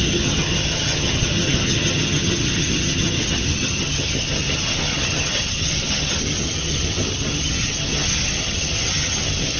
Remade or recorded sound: remade